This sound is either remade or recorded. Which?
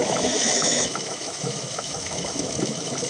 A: remade